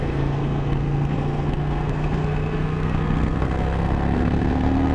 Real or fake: fake